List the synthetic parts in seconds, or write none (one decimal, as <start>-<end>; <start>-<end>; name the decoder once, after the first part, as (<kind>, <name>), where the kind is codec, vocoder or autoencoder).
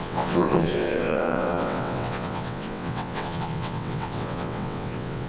0.0-5.3 (vocoder, WaveNeXt)